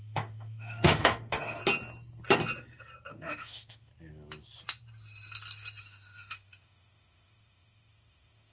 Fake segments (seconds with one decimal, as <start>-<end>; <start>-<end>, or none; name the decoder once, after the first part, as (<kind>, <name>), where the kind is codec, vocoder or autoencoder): 0.0-1.6 (autoencoder, DAC-VAE); 3.1-3.9; 5.8-8.5